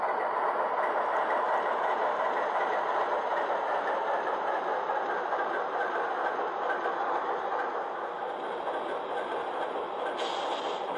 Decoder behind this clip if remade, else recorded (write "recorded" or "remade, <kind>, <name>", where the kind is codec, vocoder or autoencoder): recorded